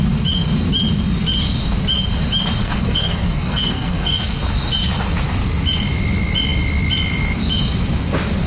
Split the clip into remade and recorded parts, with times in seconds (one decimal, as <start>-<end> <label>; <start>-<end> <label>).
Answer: 0.0-2.6 recorded; 2.6-4.4 remade; 4.4-8.5 recorded